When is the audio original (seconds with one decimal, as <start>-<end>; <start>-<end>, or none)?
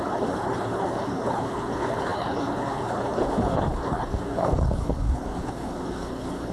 none